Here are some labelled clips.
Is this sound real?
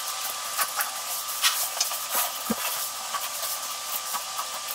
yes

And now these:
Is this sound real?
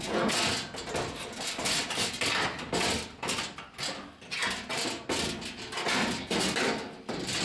yes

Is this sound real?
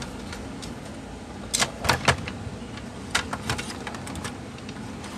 yes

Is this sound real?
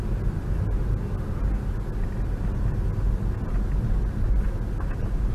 yes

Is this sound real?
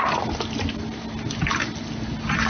yes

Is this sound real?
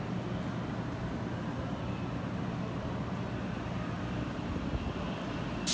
yes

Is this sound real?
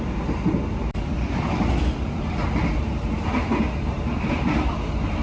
yes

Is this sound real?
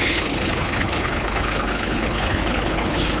no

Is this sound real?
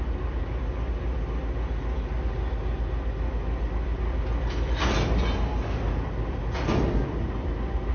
yes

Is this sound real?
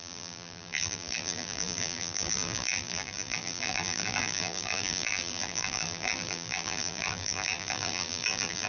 no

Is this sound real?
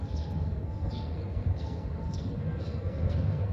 no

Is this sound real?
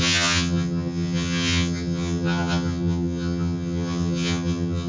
no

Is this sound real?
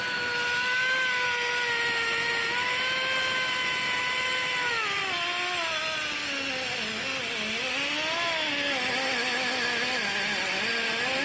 yes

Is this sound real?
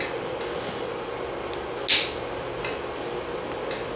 yes